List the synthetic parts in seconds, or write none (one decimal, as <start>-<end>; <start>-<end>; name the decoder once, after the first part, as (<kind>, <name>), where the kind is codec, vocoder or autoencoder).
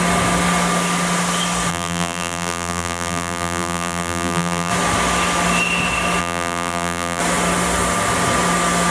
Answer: 1.7-4.7 (vocoder, BigVGAN v2); 6.2-7.2